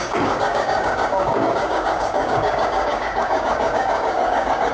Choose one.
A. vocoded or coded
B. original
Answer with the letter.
A